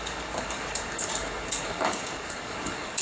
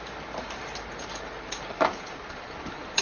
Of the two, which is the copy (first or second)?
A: first